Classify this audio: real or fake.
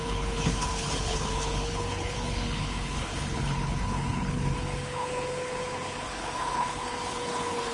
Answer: fake